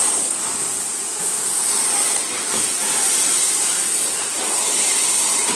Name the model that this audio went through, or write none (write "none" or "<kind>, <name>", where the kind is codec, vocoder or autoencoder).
none